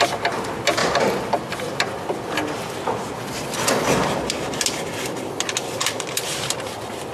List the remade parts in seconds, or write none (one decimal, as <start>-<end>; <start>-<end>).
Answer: none